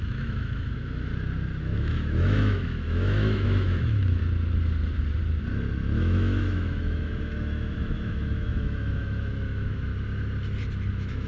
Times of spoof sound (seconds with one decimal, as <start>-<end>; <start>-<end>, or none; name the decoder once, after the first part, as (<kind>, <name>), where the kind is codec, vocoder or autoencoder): 0.0-1.1 (autoencoder, DAC-VAE); 1.6-4.2; 6.0-9.9; 10.9-11.3